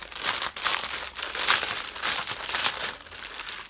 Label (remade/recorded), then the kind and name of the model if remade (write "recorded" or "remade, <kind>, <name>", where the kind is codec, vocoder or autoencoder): recorded